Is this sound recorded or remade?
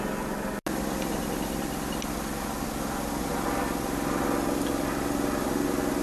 recorded